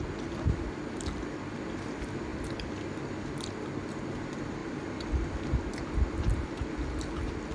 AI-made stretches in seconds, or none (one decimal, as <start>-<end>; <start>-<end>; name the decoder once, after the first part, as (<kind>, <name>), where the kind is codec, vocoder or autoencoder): none